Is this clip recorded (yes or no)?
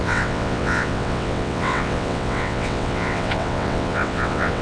no